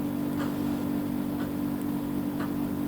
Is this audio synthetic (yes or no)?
no